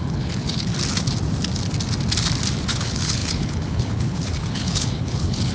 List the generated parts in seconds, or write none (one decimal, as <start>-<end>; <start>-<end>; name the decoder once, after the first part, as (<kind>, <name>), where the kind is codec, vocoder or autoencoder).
0.0-0.7 (codec, HILCodec); 2.7-5.5